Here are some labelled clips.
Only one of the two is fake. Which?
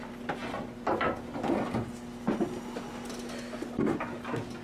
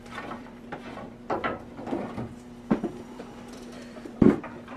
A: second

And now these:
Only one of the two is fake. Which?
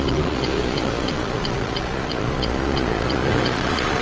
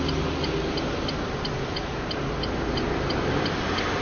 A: first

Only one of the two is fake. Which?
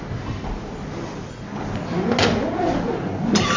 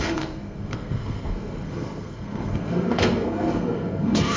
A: second